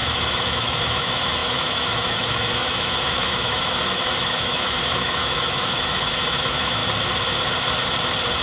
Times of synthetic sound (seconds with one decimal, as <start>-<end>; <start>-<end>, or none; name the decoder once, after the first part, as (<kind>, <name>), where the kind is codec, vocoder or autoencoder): 0.0-6.8 (autoencoder, DAC-VAE)